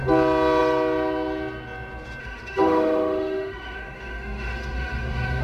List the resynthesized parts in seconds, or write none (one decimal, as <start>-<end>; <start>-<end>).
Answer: 2.2-5.4